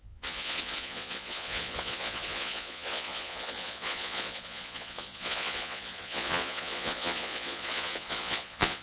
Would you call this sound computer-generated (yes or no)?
yes